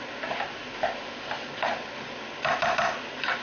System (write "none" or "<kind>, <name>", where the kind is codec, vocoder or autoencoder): none